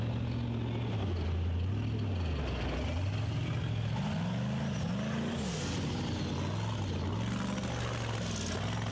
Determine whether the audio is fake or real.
real